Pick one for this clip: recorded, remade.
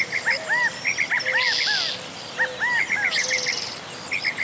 recorded